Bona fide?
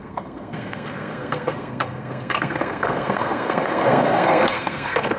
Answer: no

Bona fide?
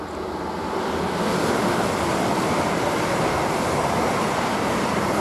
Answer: yes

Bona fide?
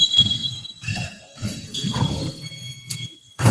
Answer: no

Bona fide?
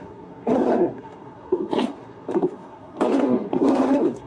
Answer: no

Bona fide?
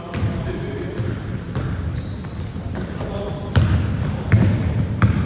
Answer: yes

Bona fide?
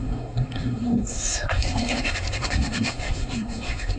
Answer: no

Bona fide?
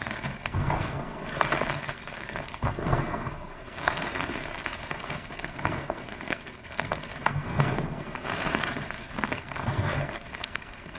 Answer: no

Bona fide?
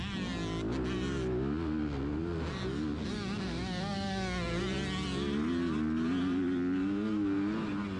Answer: yes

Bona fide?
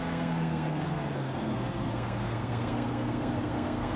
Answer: no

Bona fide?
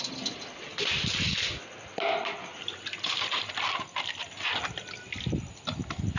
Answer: yes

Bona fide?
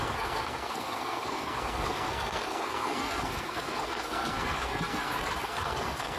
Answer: no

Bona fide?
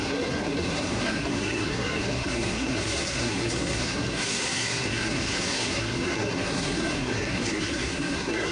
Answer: no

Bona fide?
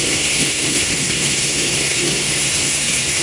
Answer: no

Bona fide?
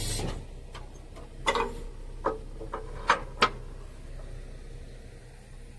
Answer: yes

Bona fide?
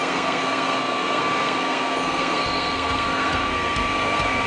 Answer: no